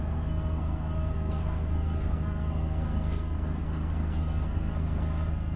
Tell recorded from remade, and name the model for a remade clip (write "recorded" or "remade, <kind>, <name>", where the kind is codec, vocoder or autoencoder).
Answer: remade, codec, SNAC